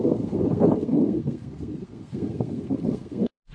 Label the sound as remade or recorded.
remade